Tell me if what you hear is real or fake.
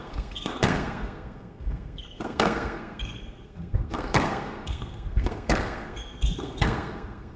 fake